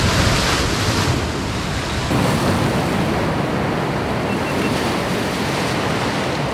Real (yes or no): yes